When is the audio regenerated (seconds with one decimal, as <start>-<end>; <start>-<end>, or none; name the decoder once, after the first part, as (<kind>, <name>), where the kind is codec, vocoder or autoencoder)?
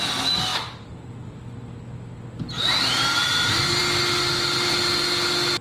none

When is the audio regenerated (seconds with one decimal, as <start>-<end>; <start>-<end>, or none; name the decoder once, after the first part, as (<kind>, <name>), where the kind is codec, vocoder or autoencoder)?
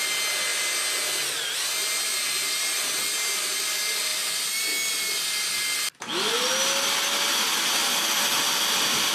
none